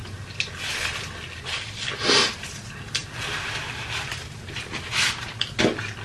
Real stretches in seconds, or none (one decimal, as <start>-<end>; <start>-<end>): 0.0-6.0